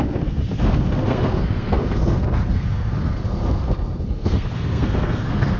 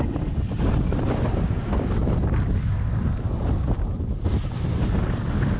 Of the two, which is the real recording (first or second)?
second